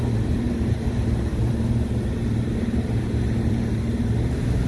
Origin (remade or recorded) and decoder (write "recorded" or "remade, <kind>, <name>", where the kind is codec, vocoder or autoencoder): remade, vocoder, BigVGAN v2